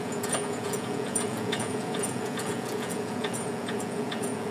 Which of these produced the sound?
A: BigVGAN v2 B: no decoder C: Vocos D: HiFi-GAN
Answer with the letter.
C